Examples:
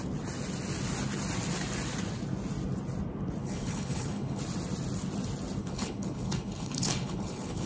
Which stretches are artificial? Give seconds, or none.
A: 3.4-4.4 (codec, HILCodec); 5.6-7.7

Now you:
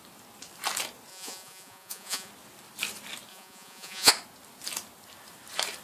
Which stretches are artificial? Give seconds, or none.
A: 1.1-2.3 (vocoder, Vocos); 3.3-4.1